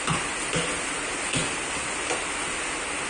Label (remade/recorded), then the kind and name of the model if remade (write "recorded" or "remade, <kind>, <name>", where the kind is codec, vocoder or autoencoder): recorded